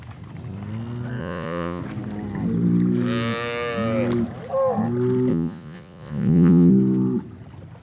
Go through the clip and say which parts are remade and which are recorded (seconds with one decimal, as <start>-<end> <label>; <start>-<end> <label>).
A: 0.0-1.2 recorded; 1.2-1.8 remade; 1.8-5.3 recorded; 5.3-6.7 remade; 6.7-7.8 recorded